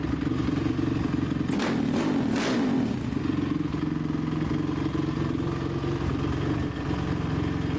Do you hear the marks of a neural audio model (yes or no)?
no